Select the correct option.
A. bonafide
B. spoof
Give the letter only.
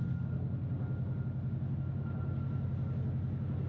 A